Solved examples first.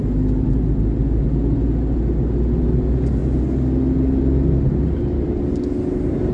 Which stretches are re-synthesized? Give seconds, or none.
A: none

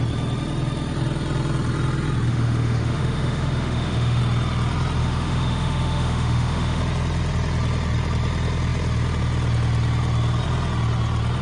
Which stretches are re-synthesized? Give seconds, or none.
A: 2.3-4.2 (autoencoder, DAC-VAE); 5.0-6.8

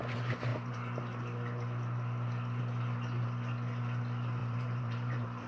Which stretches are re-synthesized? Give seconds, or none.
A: 4.4-5.5 (vocoder, BigVGAN v2)

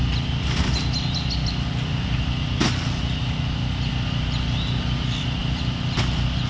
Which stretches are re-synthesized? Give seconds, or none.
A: none

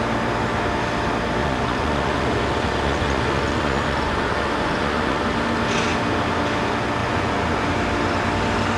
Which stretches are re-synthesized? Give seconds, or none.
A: 1.4-5.2 (vocoder, Vocos); 7.0-7.7

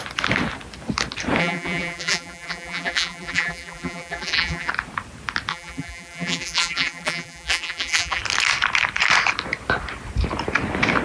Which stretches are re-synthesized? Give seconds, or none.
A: 1.4-4.7 (vocoder, BigVGAN v2); 5.5-8.2